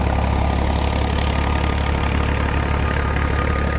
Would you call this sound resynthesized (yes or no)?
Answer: no